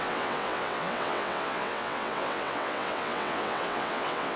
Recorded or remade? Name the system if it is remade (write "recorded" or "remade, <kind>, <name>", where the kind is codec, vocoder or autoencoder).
remade, vocoder, WaveNeXt